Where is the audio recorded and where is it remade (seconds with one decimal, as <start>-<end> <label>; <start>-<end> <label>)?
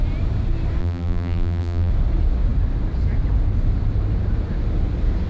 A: 0.0-0.8 recorded; 0.8-1.9 remade; 1.9-5.3 recorded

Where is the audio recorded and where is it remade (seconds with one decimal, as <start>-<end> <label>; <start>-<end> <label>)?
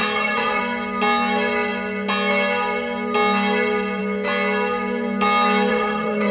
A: 0.0-0.6 remade; 0.6-5.7 recorded; 5.7-6.3 remade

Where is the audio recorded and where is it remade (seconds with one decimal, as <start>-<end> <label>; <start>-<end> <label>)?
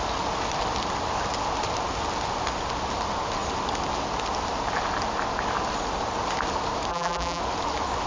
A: 0.0-6.9 recorded; 6.9-7.4 remade; 7.4-8.1 recorded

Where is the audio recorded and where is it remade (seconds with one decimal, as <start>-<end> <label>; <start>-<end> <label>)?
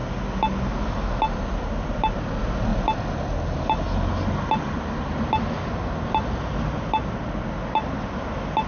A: 0.0-8.7 recorded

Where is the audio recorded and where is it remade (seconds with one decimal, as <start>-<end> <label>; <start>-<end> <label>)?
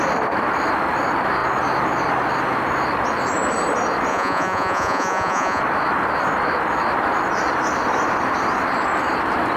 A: 0.0-4.1 recorded; 4.1-5.6 remade; 5.6-9.6 recorded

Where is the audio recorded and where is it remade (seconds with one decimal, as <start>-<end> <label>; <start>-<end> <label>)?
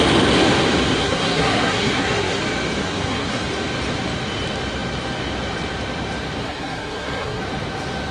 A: 0.0-1.0 recorded; 1.0-2.4 remade; 2.4-2.8 recorded; 2.8-3.5 remade; 3.5-6.4 recorded; 6.4-7.4 remade; 7.4-8.1 recorded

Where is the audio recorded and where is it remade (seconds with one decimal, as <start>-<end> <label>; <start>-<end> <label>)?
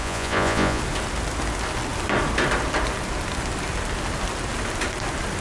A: 0.0-0.8 remade; 0.8-5.4 recorded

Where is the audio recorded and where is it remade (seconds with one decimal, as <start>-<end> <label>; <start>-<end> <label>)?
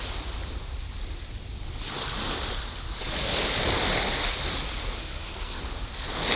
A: 0.0-5.0 recorded; 5.0-5.6 remade; 5.6-6.4 recorded